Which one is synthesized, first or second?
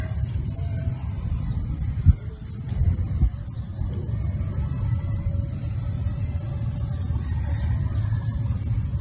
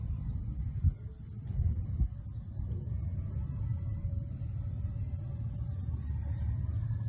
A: first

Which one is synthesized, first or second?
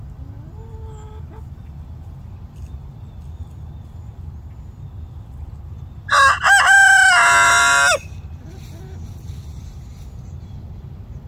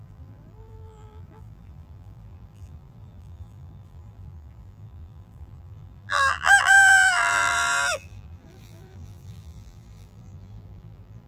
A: second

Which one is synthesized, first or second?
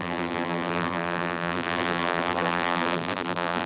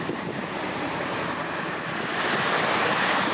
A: first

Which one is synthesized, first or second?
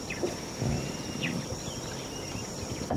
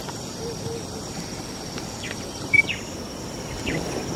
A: second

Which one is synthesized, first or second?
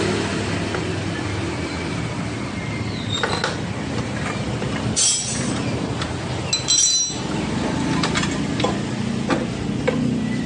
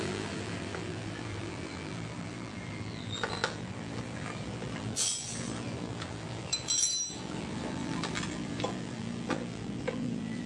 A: second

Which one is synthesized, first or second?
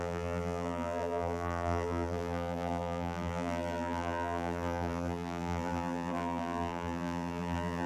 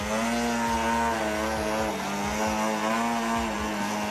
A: first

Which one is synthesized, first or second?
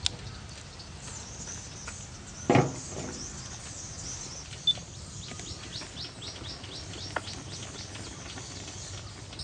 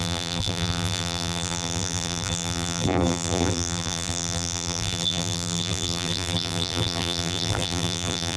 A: second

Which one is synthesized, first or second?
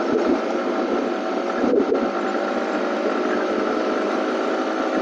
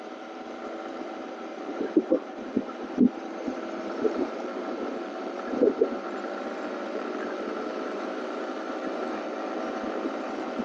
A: second